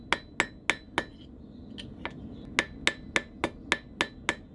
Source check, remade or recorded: recorded